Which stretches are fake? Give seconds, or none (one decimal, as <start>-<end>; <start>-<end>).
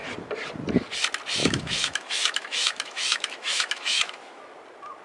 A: 1.4-4.4